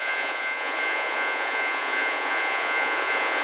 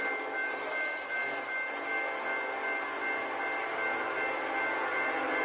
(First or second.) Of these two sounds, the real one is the second